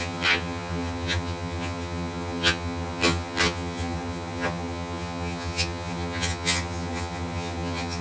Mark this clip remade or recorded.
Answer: remade